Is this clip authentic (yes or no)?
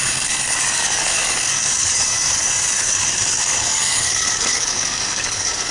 no